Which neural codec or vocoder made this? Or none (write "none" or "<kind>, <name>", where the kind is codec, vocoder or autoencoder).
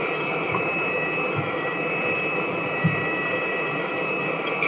autoencoder, DAC-VAE